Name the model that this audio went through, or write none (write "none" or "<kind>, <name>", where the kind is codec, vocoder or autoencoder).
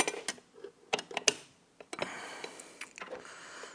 none